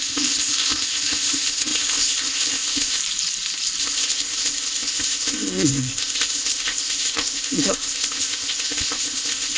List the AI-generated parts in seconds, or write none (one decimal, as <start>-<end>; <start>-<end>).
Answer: 0.0-3.0; 3.8-9.6